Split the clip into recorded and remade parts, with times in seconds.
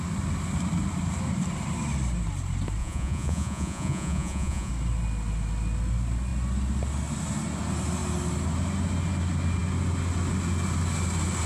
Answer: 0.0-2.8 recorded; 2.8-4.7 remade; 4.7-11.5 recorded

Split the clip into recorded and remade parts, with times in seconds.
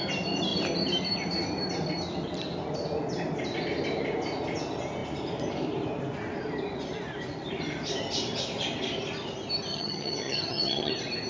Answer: 0.0-9.7 recorded; 9.7-10.9 remade; 10.9-11.3 recorded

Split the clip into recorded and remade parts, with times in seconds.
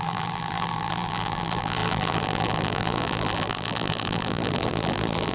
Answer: 0.0-5.3 remade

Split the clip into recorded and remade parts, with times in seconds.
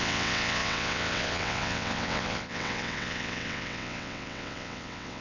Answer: 0.0-5.2 remade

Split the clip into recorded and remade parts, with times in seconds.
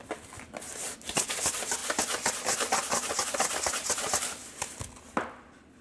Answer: 0.0-5.8 recorded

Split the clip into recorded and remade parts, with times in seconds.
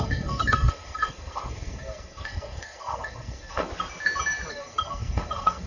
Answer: 0.0-3.7 remade; 3.7-4.5 recorded; 4.5-5.7 remade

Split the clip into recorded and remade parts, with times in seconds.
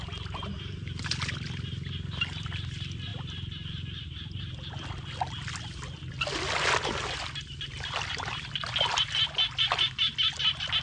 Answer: 0.0-10.8 recorded